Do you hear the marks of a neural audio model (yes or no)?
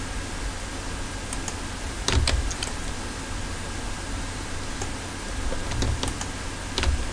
no